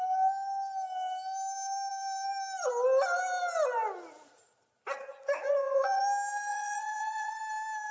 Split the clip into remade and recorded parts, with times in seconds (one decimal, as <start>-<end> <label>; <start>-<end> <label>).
0.0-5.1 recorded; 5.1-6.0 remade; 6.0-6.5 recorded; 6.5-7.4 remade; 7.4-7.9 recorded

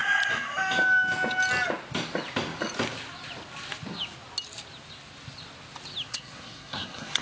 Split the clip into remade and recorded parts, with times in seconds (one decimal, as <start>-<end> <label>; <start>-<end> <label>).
0.0-6.1 recorded; 6.1-7.2 remade

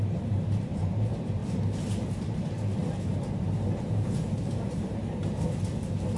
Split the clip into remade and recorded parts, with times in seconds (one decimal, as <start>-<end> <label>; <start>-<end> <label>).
0.0-1.4 remade; 1.4-1.9 recorded; 1.9-2.7 remade; 2.7-3.8 recorded; 3.8-6.2 remade

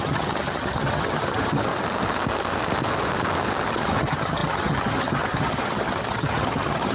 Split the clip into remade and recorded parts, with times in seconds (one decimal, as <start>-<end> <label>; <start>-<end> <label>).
0.0-1.7 remade; 1.7-3.7 recorded; 3.7-6.9 remade

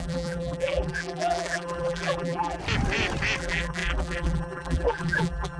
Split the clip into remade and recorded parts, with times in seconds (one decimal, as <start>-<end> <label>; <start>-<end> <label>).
0.0-2.6 remade; 2.6-3.4 recorded; 3.4-5.6 remade

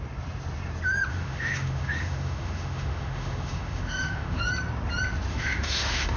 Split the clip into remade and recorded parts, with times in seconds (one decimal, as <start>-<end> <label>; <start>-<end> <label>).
0.0-1.1 recorded; 1.1-4.4 remade; 4.4-5.3 recorded; 5.3-6.2 remade